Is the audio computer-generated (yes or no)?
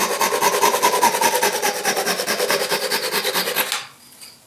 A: no